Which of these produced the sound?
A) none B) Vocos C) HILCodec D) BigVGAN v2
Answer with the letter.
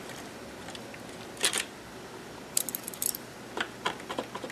A